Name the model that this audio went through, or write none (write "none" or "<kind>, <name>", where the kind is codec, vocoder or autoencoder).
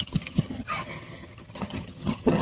vocoder, HiFi-GAN